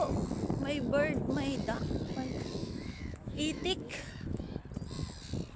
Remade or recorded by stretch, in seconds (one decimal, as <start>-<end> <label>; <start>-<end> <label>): 0.0-2.6 recorded; 2.6-4.6 remade; 4.6-5.6 recorded